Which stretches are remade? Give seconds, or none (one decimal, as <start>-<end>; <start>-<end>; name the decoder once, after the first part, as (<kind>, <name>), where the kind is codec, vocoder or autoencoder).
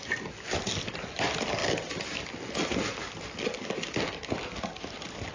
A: none